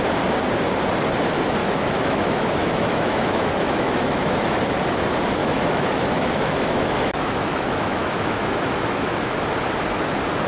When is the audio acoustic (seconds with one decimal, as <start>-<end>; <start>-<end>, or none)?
0.0-1.6; 4.6-5.4; 9.2-10.5